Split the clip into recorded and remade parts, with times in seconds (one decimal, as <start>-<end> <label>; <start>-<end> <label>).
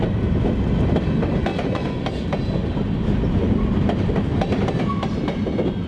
0.0-1.5 recorded; 1.5-2.0 remade; 2.0-5.9 recorded